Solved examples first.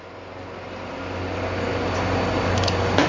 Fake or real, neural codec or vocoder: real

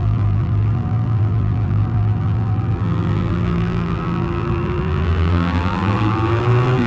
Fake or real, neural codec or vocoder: fake, vocoder, BigVGAN v2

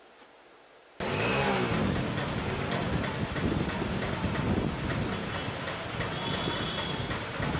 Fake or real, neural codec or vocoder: real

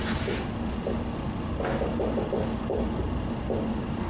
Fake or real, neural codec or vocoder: real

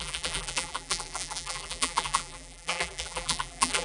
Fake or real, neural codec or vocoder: fake, vocoder, BigVGAN v2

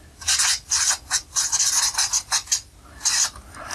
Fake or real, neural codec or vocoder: real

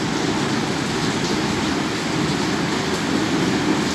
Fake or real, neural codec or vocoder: real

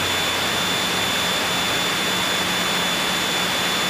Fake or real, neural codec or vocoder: real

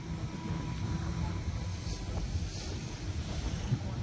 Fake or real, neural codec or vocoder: fake, vocoder, BigVGAN v2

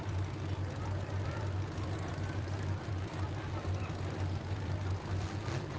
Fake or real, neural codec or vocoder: fake, vocoder, BigVGAN v2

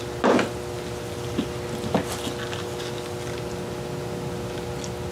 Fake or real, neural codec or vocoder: real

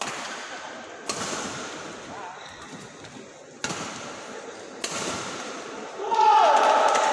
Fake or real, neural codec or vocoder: real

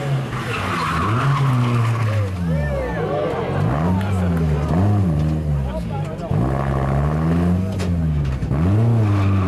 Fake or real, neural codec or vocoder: real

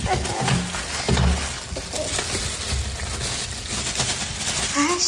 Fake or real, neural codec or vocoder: real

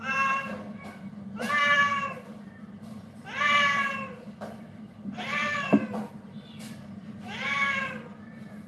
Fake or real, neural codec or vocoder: fake, vocoder, BigVGAN v2